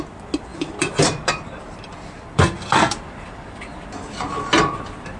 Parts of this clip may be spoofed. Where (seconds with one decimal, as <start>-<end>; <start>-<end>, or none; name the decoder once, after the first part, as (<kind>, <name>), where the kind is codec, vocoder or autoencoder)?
0.5-3.6 (vocoder, BigVGAN v2)